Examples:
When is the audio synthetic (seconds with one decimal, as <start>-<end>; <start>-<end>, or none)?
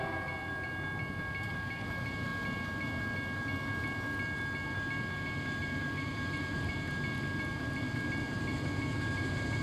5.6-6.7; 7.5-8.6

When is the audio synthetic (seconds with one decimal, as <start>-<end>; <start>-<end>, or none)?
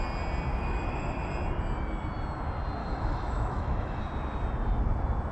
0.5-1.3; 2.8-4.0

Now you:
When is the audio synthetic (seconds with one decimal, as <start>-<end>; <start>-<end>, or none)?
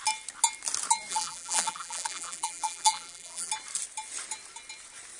1.1-3.5